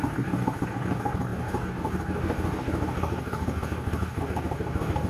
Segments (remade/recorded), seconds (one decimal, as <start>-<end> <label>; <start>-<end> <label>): 0.0-5.1 remade